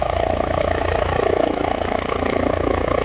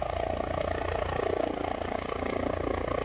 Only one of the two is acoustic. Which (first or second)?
second